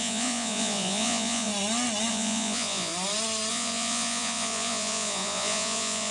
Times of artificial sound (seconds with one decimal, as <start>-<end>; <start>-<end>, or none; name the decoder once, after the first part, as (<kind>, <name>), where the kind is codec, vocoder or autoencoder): 0.0-1.5 (vocoder, Vocos); 2.1-2.9; 3.5-6.1